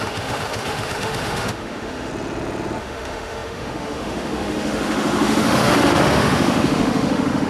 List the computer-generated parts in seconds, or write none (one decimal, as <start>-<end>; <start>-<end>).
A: 0.0-2.1; 2.8-7.5